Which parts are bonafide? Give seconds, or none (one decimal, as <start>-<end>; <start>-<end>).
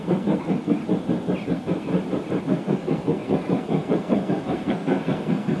0.8-1.5; 1.9-2.4